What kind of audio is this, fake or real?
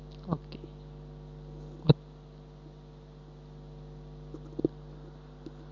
real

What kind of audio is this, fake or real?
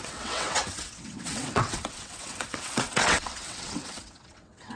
fake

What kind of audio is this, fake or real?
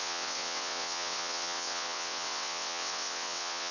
fake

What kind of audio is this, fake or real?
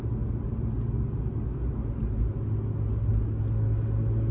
real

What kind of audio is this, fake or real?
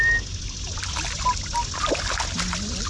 real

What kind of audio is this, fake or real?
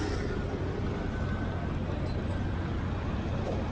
real